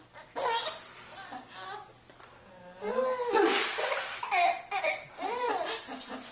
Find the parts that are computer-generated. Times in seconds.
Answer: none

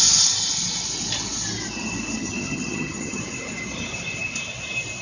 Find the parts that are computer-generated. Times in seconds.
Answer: 2.2-3.2 (vocoder, HiFi-GAN)

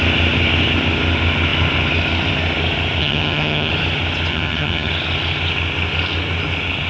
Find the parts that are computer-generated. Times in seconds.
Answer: 3.0-3.7 (vocoder, HiFi-GAN); 4.3-4.9